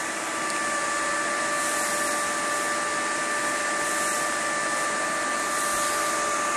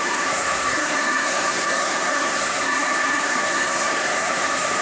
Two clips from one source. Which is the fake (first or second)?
second